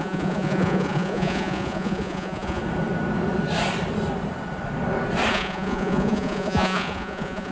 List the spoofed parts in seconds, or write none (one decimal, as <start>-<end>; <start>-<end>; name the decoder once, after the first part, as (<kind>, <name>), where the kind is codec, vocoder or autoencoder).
0.0-2.6 (vocoder, Vocos); 5.3-7.5